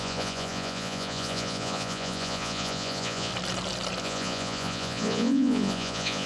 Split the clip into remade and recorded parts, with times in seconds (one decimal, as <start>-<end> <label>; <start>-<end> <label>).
0.0-3.3 remade; 3.3-4.0 recorded; 4.0-6.3 remade